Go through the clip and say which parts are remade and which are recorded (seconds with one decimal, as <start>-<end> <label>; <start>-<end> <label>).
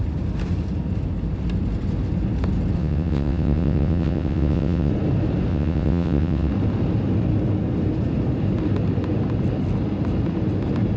0.0-2.8 recorded; 2.8-4.9 remade; 4.9-5.5 recorded; 5.5-6.5 remade; 6.5-11.0 recorded